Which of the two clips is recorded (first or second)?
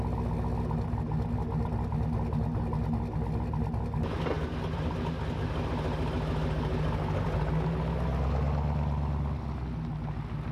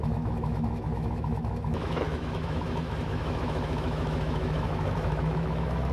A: first